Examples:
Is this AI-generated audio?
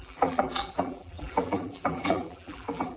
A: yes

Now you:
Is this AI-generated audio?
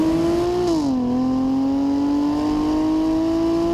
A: no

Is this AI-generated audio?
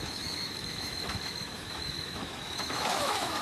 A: yes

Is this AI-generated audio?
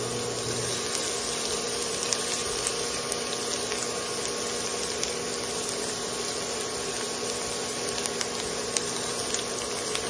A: no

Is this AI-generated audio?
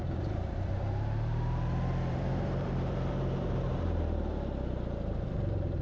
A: yes